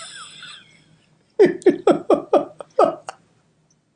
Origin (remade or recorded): recorded